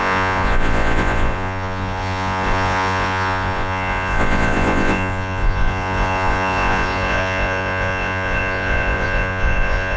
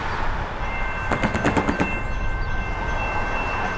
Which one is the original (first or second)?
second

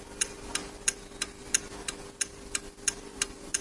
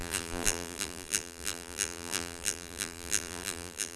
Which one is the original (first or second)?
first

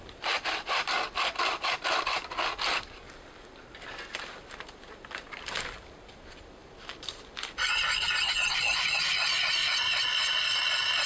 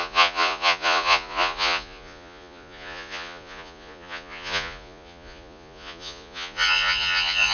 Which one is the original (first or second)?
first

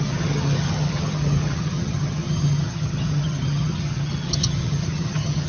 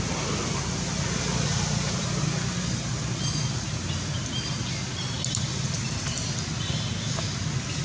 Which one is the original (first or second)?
second